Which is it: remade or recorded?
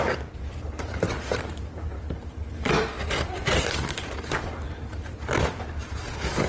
remade